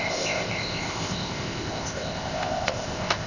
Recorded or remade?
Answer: remade